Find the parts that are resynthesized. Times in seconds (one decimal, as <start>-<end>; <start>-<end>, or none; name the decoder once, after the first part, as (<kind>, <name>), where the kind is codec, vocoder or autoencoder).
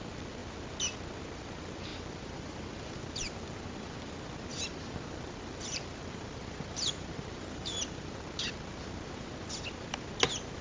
1.9-4.0 (vocoder, BigVGAN v2); 4.5-8.2